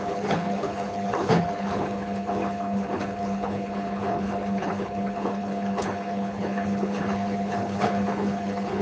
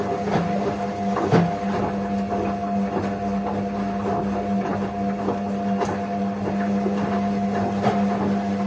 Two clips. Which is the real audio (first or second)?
second